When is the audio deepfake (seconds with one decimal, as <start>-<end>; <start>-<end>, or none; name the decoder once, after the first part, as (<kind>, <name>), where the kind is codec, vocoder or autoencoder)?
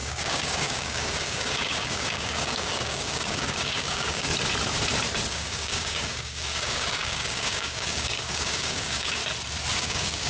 0.0-4.3 (codec, DAC); 5.3-9.2; 9.8-10.3